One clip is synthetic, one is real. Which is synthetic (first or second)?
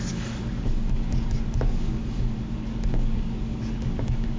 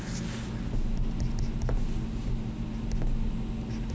first